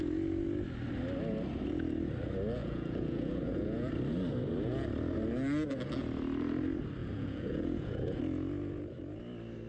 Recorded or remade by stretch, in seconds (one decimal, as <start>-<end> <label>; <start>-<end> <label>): 0.0-2.6 recorded; 2.6-3.9 remade; 3.9-7.0 recorded; 7.0-8.2 remade; 8.2-9.7 recorded